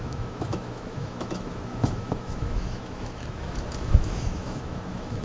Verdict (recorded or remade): remade